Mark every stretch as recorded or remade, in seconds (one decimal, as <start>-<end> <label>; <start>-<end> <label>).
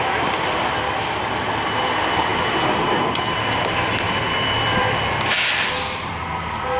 0.0-6.8 recorded